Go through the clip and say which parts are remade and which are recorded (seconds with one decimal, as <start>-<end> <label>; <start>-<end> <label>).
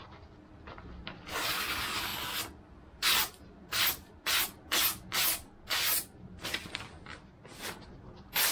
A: 0.0-8.5 recorded